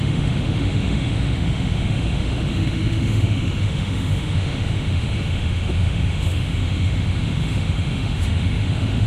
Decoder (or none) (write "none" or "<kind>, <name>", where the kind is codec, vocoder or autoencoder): autoencoder, DAC-VAE